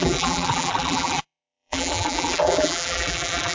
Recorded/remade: remade